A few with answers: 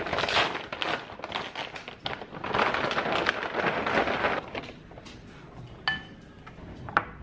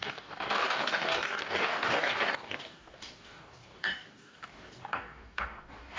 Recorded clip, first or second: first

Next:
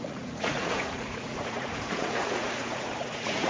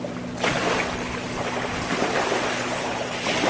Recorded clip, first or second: second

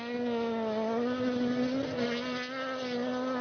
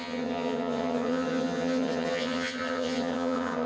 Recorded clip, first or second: first